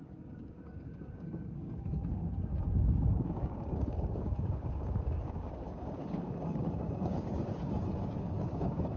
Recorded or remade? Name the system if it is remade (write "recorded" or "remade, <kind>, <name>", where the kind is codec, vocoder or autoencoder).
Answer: remade, codec, DAC